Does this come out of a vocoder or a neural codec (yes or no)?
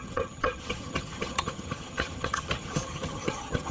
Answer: yes